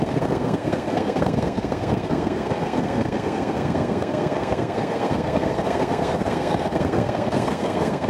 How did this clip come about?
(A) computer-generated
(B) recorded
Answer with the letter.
A